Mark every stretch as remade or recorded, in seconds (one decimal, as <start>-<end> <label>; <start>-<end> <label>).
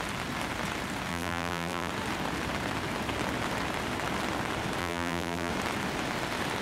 0.0-1.1 recorded; 1.1-1.9 remade; 1.9-4.8 recorded; 4.8-5.5 remade; 5.5-6.6 recorded